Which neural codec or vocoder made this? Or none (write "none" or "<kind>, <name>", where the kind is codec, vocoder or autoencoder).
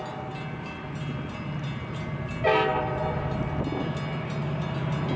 none